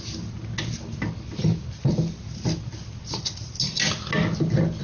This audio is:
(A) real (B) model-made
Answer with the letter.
A